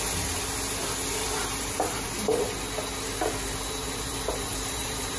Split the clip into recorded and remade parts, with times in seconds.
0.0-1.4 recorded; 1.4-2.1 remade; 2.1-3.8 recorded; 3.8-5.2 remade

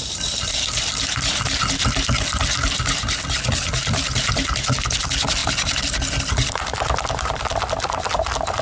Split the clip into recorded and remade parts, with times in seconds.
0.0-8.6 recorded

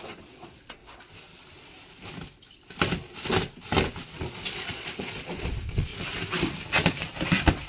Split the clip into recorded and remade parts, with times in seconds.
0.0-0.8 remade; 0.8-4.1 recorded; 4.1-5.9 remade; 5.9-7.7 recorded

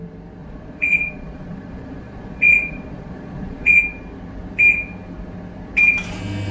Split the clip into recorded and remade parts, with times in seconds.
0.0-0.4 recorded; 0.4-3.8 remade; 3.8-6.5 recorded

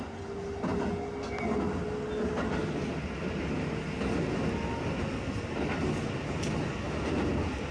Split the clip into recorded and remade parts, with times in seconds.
0.0-7.7 recorded

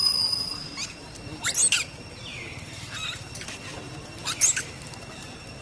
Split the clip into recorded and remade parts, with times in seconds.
0.0-5.6 recorded

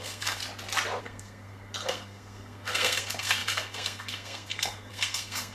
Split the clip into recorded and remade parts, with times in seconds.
0.0-0.4 remade; 0.4-1.0 recorded; 1.0-5.5 remade